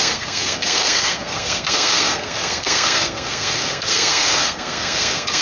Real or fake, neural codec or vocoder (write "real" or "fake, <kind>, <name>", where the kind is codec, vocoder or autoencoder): fake, codec, SNAC